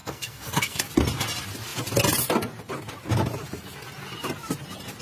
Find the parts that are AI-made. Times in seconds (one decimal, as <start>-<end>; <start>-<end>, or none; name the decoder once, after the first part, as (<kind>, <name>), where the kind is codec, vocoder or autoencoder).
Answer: 0.0-0.9 (codec, SNAC)